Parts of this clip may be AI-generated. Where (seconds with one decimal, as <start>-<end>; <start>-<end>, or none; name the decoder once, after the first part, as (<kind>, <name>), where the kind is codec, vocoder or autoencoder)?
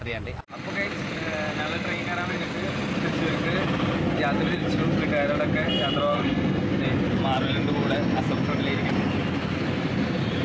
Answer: 6.1-6.7 (codec, SNAC)